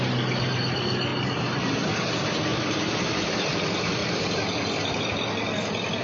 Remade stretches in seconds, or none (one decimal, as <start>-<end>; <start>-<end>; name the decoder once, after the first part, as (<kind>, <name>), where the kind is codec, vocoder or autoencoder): 1.1-1.7 (vocoder, BigVGAN v2); 2.5-3.0; 4.0-5.0